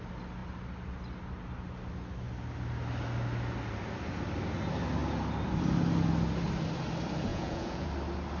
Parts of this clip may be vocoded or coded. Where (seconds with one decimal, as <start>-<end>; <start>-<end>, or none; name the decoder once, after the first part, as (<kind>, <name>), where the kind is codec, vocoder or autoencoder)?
7.3-7.9 (vocoder, Vocos)